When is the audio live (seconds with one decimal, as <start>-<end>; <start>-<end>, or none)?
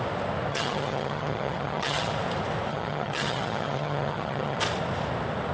0.0-0.5; 2.1-2.7; 4.6-5.5